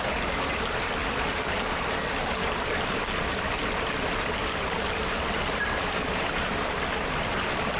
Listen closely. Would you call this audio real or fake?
real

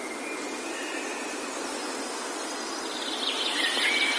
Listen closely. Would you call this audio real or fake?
real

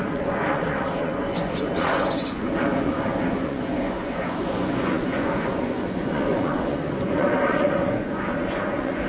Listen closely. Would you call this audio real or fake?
fake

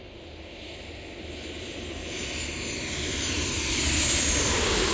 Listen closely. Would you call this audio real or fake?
real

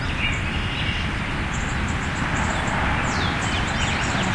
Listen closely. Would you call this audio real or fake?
real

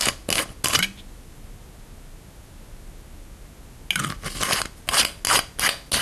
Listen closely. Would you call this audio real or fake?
real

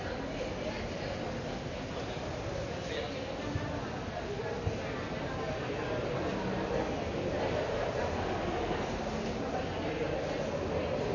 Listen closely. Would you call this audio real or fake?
real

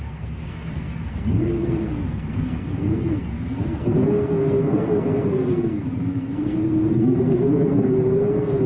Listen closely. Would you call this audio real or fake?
fake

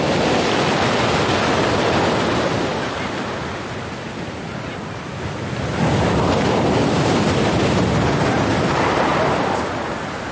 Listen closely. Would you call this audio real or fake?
real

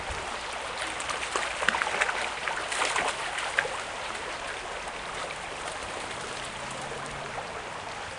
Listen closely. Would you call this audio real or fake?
real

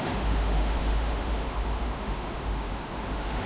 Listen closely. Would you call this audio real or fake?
fake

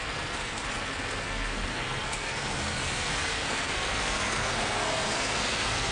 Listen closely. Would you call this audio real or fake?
fake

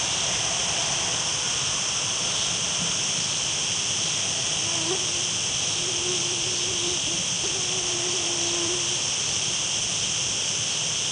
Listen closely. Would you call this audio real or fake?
real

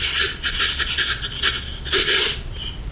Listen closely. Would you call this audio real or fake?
fake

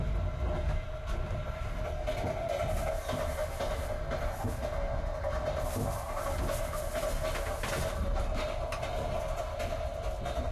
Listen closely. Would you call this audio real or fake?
real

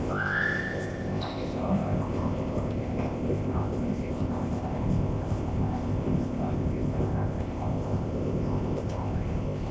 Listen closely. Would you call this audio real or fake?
fake